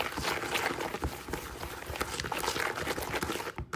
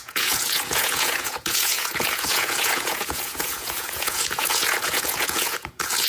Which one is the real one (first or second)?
first